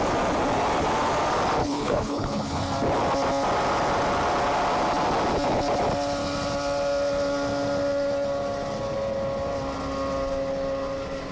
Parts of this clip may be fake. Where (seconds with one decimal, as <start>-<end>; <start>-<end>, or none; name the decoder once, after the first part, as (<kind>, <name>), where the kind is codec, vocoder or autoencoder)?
1.6-2.6 (codec, HILCodec)

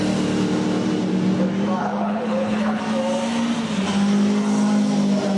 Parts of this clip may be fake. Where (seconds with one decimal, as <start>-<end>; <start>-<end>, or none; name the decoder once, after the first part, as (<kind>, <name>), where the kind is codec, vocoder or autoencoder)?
1.8-2.8 (codec, HILCodec)